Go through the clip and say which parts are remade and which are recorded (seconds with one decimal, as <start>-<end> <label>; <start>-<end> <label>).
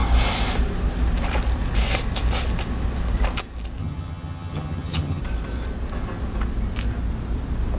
0.0-3.8 recorded; 3.8-5.2 remade; 5.2-7.8 recorded